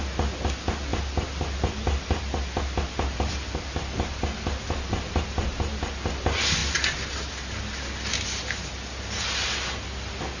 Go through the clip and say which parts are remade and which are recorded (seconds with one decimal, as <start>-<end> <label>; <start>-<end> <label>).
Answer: 0.0-10.4 recorded